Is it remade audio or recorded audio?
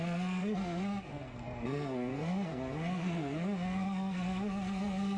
remade